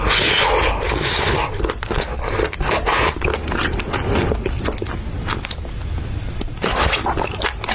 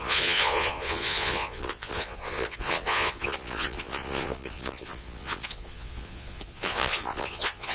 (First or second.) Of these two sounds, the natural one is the first